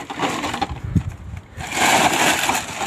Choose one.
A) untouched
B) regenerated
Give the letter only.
A